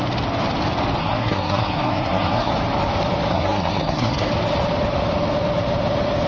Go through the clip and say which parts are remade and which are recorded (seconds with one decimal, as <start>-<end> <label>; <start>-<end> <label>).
0.0-1.0 recorded; 1.0-2.5 remade; 2.5-3.3 recorded; 3.3-4.3 remade; 4.3-6.3 recorded

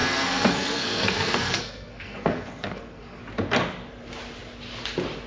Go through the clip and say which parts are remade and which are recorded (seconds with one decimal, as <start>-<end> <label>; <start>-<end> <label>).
0.0-3.2 remade; 3.2-5.3 recorded